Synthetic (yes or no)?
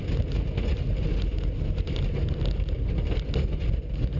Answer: no